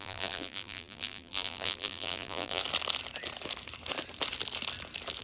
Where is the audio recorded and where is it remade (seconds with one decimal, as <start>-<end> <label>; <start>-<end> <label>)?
0.0-2.6 remade; 2.6-5.2 recorded